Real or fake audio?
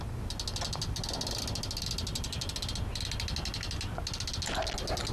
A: real